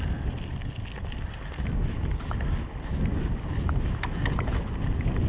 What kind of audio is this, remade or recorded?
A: recorded